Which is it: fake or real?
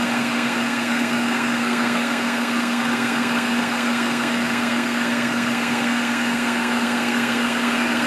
fake